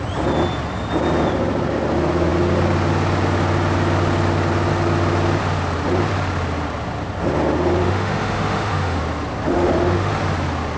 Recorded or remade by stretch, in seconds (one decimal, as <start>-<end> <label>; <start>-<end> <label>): 0.0-7.8 recorded; 7.8-9.0 remade; 9.0-9.5 recorded; 9.5-10.1 remade; 10.1-10.8 recorded